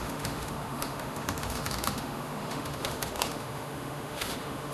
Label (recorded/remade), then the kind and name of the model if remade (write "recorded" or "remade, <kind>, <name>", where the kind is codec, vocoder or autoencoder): remade, autoencoder, DAC-VAE